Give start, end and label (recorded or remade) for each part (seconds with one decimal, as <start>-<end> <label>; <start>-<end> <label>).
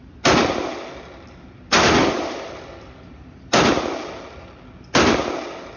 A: 0.0-2.0 recorded; 2.0-3.7 remade; 3.7-5.8 recorded